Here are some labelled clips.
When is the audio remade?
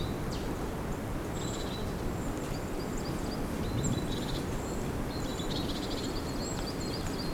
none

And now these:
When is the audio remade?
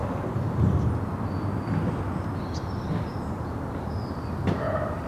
none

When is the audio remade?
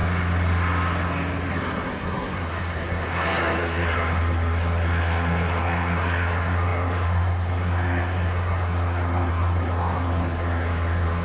1.5-11.2 (codec, SNAC)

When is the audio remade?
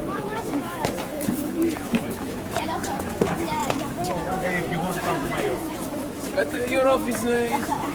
0.0-7.9 (autoencoder, DAC-VAE)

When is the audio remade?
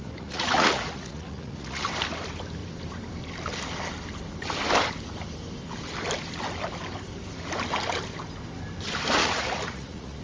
0.0-1.9 (vocoder, Vocos); 9.2-10.2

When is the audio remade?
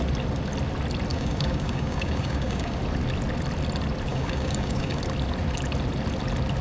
1.1-2.8 (codec, DAC); 4.1-5.0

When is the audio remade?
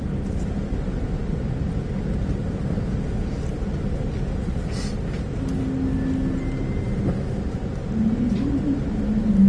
none